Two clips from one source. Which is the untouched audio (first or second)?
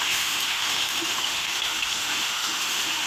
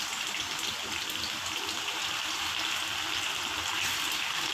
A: second